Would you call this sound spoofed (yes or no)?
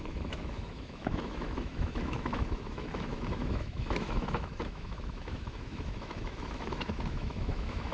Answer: yes